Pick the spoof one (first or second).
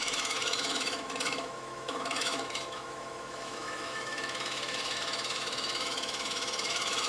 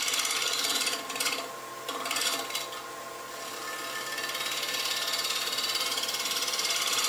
first